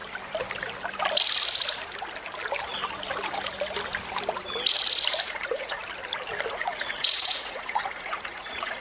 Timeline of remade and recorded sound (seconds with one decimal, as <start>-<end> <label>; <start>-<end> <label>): 0.0-5.2 recorded; 5.2-5.8 remade; 5.8-6.5 recorded; 6.5-8.8 remade